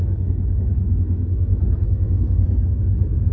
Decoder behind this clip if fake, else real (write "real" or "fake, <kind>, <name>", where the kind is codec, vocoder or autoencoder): fake, codec, SNAC